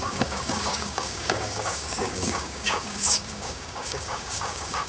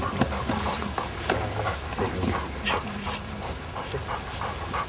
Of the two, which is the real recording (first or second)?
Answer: second